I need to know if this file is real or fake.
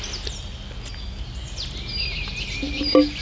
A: real